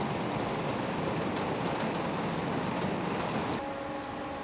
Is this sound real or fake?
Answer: real